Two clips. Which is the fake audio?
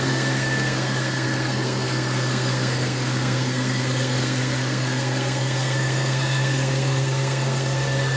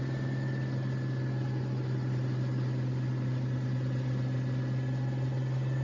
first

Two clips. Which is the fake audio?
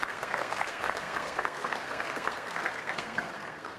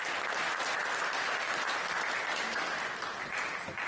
first